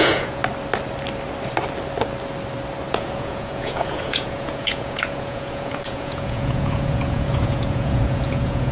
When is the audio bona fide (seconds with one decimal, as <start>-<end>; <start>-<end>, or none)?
0.4-2.9